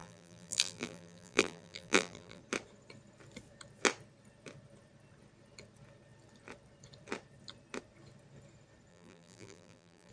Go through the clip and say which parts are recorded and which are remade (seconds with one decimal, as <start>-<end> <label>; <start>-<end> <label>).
0.0-2.4 remade; 2.4-8.9 recorded; 8.9-10.1 remade